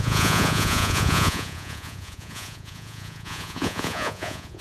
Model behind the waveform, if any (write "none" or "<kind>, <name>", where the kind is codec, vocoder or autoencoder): vocoder, Vocos